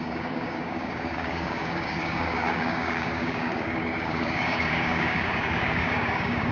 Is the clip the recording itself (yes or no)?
no